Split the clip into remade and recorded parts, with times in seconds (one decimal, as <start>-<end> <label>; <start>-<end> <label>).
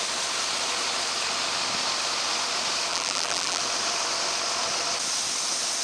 0.0-2.9 recorded; 2.9-3.6 remade; 3.6-5.8 recorded